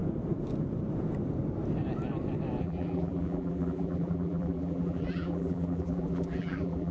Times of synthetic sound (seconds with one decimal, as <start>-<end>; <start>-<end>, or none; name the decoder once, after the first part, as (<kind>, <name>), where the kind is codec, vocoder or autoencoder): 2.6-6.9 (vocoder, BigVGAN v2)